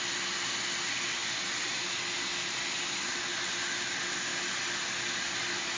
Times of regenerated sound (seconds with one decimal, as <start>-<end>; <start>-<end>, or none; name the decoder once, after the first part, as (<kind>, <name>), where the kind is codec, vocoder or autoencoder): none